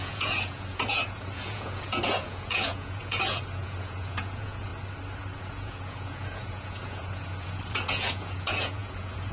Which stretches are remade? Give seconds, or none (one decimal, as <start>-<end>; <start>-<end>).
0.0-4.7; 5.4-9.3